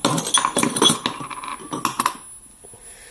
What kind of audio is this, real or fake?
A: real